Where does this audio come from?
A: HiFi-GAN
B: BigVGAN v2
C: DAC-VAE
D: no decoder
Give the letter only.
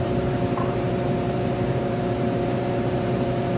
B